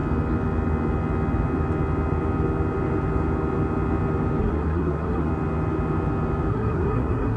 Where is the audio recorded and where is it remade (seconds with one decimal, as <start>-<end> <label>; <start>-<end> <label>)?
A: 0.0-4.4 recorded; 4.4-5.3 remade; 5.3-6.5 recorded; 6.5-7.4 remade